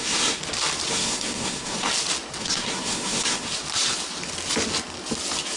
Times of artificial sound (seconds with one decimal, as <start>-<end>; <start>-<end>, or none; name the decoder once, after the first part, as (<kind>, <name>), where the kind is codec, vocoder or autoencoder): 0.0-0.4 (codec, SNAC); 0.9-1.9; 2.4-3.5